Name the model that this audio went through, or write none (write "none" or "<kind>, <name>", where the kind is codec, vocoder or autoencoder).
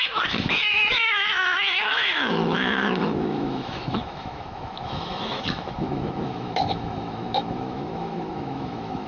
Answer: autoencoder, DAC-VAE